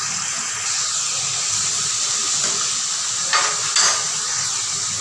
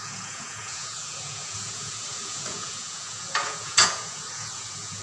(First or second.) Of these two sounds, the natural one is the first